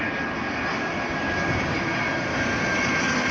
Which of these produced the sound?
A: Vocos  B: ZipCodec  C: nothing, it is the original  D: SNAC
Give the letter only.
C